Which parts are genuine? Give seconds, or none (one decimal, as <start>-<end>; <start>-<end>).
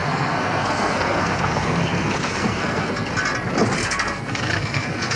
3.1-3.8